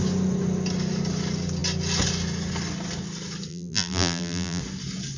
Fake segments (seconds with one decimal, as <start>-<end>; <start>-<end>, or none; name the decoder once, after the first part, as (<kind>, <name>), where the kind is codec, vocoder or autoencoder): 3.5-4.6 (vocoder, BigVGAN v2)